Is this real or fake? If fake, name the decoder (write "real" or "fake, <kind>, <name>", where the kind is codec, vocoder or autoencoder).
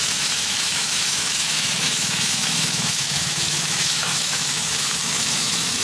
fake, autoencoder, DAC-VAE